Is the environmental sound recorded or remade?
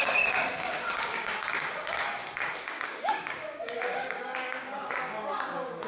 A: remade